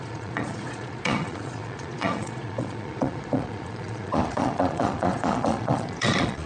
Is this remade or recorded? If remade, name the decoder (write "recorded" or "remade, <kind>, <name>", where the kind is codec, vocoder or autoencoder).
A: remade, vocoder, Vocos